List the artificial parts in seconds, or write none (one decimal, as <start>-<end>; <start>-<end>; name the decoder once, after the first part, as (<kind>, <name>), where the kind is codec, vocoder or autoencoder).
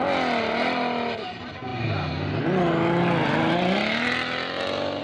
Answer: none